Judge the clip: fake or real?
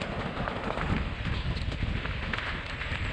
real